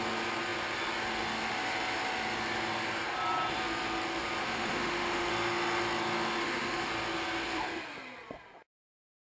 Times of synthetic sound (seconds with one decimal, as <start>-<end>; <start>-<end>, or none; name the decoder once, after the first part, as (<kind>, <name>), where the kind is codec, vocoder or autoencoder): 4.4-5.3 (autoencoder, DAC-VAE); 6.4-6.9